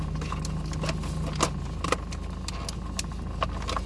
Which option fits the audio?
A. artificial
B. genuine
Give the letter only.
B